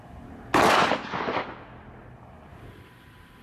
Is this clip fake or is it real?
real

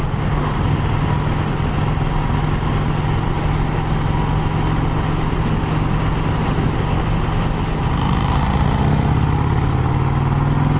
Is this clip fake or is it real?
real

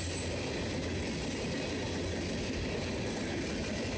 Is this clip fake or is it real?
real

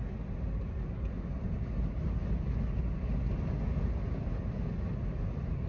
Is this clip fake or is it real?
real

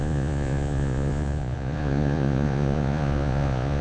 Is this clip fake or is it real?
fake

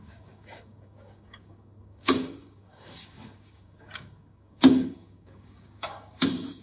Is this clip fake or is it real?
fake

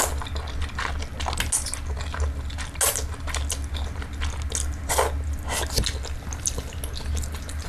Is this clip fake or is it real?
real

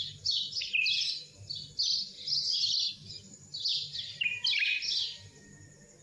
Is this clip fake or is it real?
real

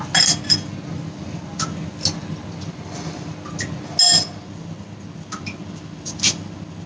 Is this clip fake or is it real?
real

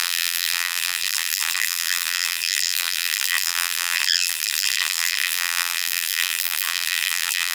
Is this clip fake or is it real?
fake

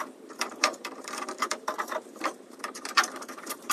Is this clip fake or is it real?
fake